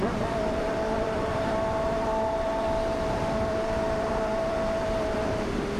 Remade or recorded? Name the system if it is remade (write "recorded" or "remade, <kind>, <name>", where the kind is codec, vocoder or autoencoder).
remade, vocoder, BigVGAN v2